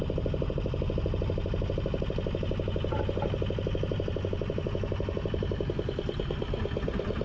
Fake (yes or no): no